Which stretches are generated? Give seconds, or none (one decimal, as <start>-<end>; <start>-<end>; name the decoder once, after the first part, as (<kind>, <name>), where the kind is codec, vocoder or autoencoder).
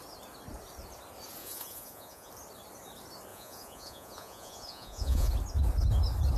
1.4-2.3 (vocoder, Vocos); 3.3-5.3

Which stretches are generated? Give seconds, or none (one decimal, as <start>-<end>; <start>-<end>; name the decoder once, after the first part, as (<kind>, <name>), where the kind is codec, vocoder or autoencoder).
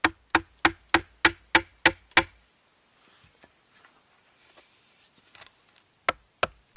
none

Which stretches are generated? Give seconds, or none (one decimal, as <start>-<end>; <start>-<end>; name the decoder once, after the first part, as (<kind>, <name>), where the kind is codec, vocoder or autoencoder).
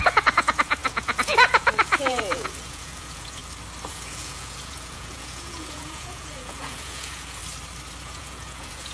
0.0-3.4 (vocoder, Vocos); 3.9-7.4; 8.0-8.9